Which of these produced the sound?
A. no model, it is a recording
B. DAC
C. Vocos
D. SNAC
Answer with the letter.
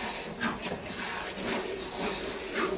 A